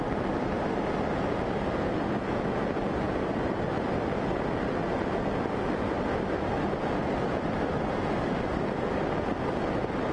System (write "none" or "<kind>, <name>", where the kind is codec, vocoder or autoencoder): none